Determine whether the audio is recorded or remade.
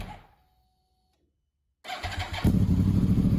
recorded